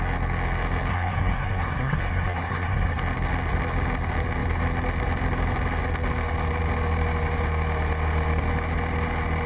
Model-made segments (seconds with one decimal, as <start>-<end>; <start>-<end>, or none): 0.9-3.0